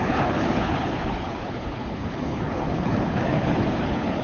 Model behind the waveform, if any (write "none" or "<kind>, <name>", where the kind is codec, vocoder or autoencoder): codec, HILCodec